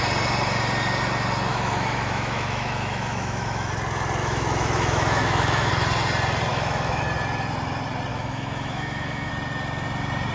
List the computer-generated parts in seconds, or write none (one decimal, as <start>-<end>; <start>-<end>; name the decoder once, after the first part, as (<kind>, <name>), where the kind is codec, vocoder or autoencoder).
1.5-3.7 (autoencoder, DAC-VAE); 4.2-5.7; 6.5-7.0; 8.1-9.3